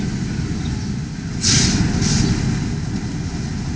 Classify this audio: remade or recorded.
recorded